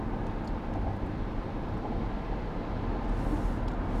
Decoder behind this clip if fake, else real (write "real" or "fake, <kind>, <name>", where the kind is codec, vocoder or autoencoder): real